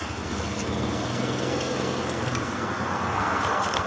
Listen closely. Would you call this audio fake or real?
fake